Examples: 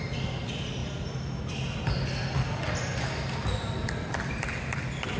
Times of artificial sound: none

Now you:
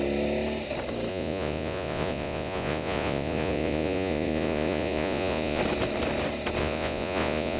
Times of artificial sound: 1.1-5.6 (vocoder, Vocos); 6.6-7.6